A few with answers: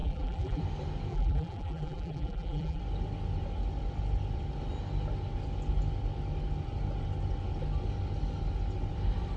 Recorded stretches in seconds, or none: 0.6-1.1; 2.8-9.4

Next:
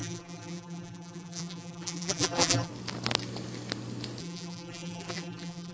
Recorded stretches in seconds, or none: 2.7-4.2

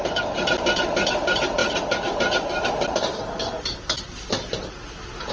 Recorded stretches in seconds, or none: 0.0-5.3